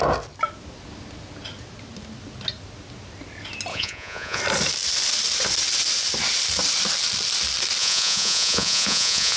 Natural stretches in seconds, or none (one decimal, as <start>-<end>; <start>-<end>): 0.0-3.7; 4.4-7.8